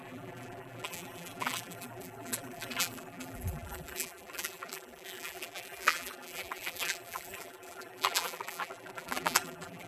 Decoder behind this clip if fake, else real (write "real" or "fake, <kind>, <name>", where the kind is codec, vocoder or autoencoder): fake, vocoder, BigVGAN v2